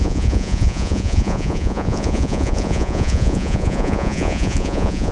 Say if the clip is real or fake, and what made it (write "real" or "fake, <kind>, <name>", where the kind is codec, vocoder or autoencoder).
fake, vocoder, Vocos